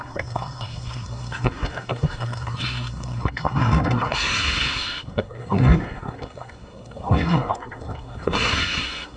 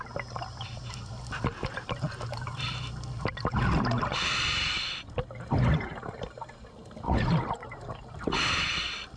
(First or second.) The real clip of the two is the second